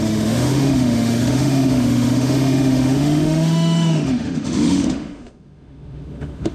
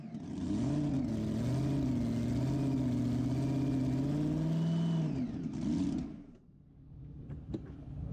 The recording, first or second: second